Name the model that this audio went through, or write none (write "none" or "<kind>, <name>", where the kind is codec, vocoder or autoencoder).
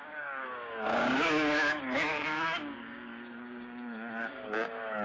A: codec, DAC